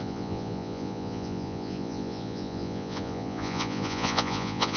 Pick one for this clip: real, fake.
fake